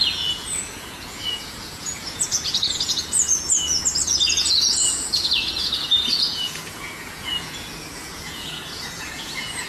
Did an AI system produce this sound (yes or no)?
yes